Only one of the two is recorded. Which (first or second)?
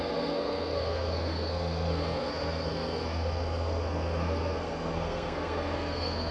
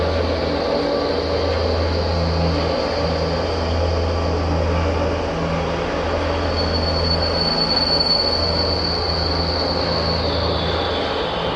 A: second